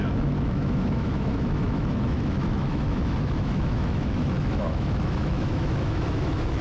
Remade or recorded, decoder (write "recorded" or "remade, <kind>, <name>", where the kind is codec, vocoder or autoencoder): remade, autoencoder, DAC-VAE